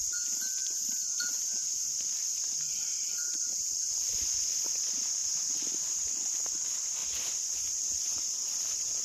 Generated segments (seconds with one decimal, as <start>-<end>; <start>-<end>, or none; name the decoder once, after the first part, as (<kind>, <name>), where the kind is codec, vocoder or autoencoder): 0.6-3.9 (vocoder, BigVGAN v2); 5.2-6.4